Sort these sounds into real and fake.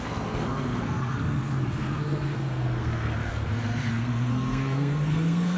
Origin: fake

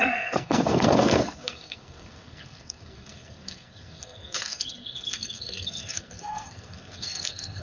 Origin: fake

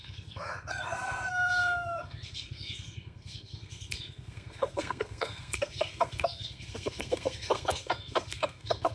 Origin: fake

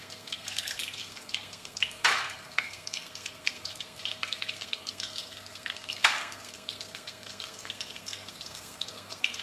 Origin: fake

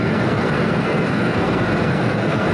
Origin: fake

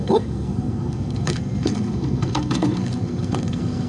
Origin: fake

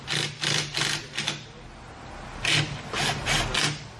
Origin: real